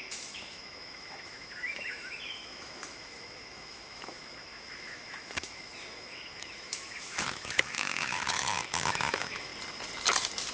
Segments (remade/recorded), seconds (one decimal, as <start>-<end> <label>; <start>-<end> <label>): 0.0-9.5 remade; 9.5-10.5 recorded

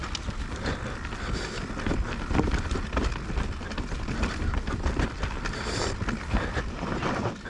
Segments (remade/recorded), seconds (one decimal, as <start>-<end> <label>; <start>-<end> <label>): 0.0-7.5 recorded